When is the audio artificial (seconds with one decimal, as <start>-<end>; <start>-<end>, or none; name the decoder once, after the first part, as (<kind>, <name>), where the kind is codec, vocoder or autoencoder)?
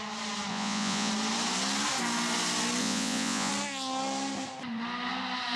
0.5-1.1 (vocoder, Vocos); 2.8-3.5